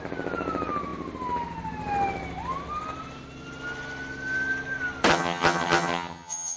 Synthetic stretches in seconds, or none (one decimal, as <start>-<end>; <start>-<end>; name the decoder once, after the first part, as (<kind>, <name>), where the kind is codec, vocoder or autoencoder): 5.1-6.6 (vocoder, HiFi-GAN)